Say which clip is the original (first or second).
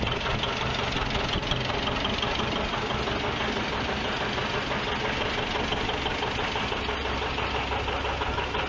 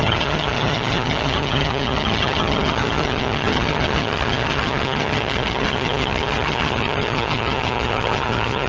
first